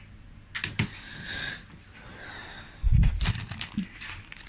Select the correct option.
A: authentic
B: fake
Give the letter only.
A